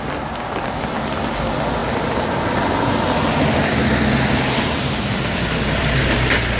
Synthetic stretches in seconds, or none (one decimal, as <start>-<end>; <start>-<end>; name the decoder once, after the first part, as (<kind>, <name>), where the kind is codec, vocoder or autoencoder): none